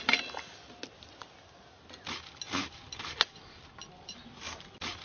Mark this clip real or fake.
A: real